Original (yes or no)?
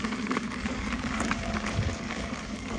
no